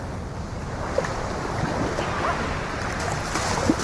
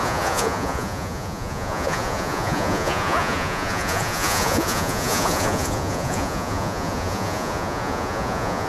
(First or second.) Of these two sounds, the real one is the first